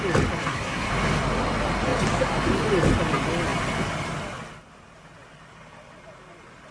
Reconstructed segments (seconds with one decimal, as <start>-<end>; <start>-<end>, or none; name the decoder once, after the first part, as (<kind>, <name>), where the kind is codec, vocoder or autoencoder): 0.4-0.9 (codec, SNAC)